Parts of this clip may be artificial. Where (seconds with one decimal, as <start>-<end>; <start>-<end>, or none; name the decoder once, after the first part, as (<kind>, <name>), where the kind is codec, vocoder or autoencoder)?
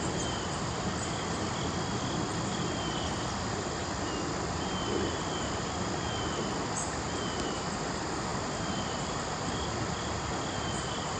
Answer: none